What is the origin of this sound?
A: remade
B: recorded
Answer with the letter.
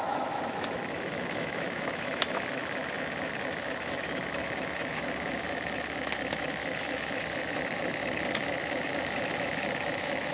A